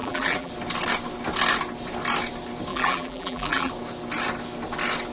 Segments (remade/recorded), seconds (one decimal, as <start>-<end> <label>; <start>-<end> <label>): 0.0-0.5 remade; 0.5-2.7 recorded; 2.7-3.7 remade; 3.7-5.1 recorded